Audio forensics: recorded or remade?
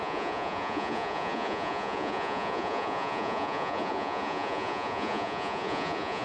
remade